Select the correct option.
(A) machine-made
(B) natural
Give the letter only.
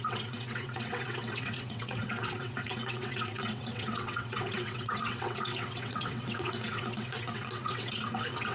A